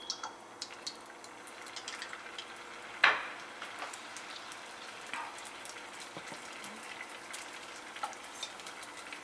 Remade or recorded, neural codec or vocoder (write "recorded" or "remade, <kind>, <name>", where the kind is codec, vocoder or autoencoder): recorded